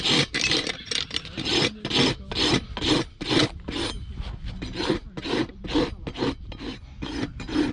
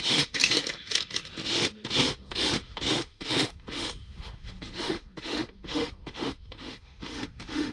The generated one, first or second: second